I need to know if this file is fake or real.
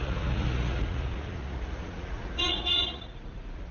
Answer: fake